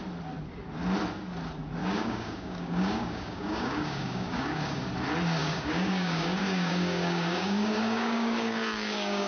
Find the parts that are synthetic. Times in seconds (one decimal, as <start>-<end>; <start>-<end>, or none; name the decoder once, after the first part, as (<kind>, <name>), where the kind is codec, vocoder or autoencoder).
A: 1.8-4.8 (codec, DAC); 5.4-9.3